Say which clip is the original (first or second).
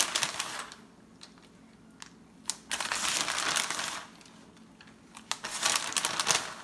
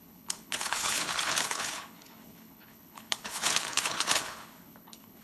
first